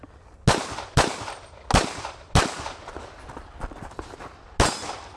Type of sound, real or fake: real